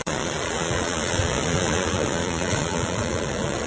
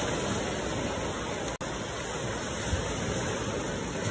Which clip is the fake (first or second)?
first